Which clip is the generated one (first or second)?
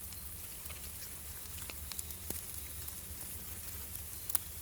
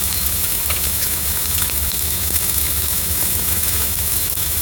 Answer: second